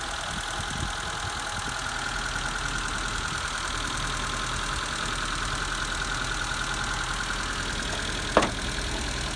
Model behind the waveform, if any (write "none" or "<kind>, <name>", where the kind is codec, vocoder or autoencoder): none